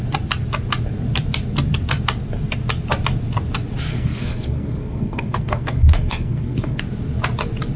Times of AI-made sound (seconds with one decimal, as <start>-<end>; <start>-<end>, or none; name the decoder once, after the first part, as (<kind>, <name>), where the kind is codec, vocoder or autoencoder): 3.9-6.8 (codec, SNAC)